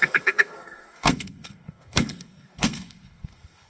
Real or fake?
fake